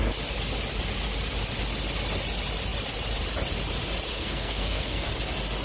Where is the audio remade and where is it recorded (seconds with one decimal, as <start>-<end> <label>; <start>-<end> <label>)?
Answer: 0.0-4.1 recorded; 4.1-5.1 remade; 5.1-5.6 recorded